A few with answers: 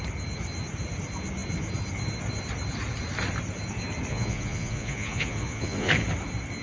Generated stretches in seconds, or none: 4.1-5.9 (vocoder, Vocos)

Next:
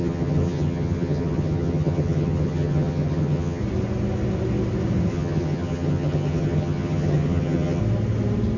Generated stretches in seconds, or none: 0.0-3.6 (vocoder, HiFi-GAN); 5.1-7.8

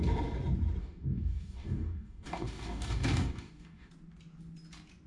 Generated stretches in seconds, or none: 0.8-3.9 (codec, DAC)